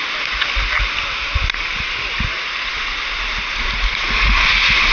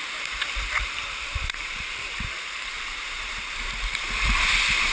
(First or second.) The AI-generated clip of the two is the second